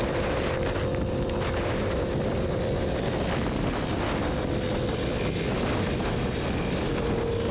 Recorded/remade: recorded